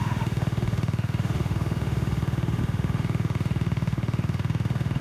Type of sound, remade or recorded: remade